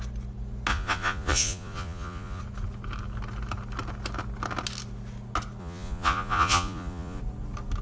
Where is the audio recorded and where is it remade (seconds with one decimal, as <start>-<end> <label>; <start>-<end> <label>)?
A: 0.0-0.7 recorded; 0.7-2.4 remade; 2.4-5.6 recorded; 5.6-7.2 remade; 7.2-7.8 recorded